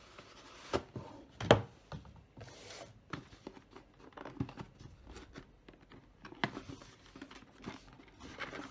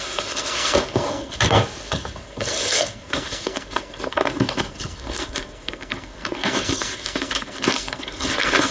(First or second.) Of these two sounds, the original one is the first